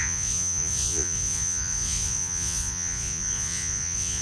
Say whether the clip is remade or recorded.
remade